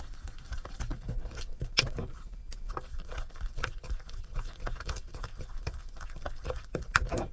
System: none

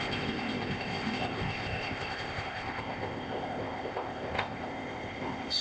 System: codec, ZipCodec